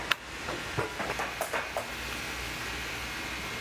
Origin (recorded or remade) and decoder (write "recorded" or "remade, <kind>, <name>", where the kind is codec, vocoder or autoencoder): recorded